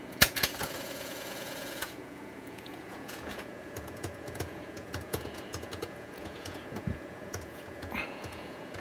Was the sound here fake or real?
fake